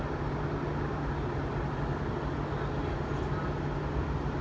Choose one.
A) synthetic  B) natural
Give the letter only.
B